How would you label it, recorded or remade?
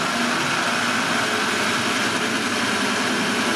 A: recorded